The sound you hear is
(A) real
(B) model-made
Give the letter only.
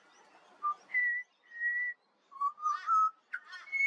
A